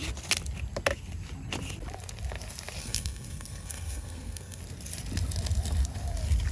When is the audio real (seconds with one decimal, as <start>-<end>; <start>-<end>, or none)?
0.0-2.8; 4.6-6.5